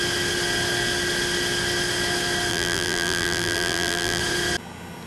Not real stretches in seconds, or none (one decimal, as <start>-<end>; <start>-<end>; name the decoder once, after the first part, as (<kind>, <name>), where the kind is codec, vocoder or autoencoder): 2.5-4.2 (vocoder, BigVGAN v2)